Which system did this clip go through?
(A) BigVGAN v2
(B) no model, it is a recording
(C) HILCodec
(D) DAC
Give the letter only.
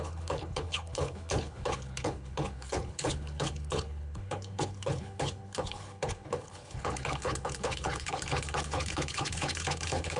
C